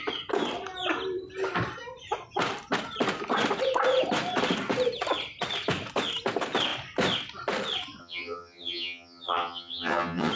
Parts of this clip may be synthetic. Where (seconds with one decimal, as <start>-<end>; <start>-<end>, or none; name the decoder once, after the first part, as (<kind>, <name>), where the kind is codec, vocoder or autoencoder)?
8.0-10.3 (vocoder, HiFi-GAN)